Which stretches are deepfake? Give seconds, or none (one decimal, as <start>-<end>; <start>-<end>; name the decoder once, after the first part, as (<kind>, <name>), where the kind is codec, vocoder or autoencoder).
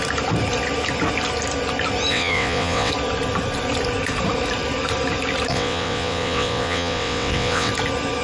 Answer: 2.1-2.9 (vocoder, WaveNeXt); 5.5-7.7